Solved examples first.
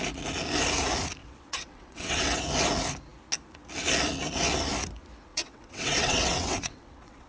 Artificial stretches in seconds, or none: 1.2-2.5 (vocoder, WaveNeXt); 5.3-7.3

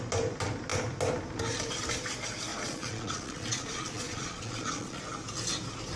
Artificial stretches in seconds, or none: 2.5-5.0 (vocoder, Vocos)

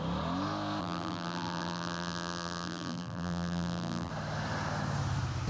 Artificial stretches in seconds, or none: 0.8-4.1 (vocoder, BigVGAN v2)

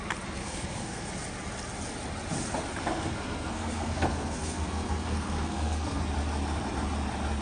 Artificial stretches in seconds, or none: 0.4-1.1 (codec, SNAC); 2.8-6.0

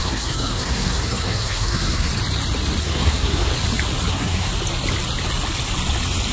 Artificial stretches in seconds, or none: 0.0-2.1 (codec, SNAC); 2.8-3.5; 4.1-4.5